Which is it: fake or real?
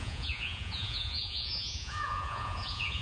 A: fake